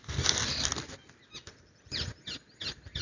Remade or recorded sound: recorded